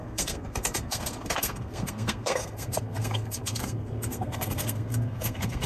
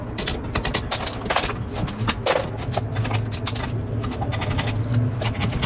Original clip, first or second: second